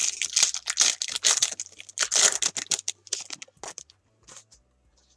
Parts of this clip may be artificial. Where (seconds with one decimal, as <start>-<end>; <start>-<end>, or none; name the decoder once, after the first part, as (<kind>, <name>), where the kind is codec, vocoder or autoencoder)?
none